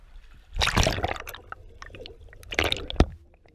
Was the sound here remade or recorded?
recorded